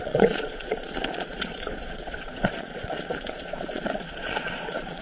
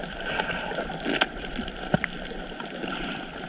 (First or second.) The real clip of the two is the second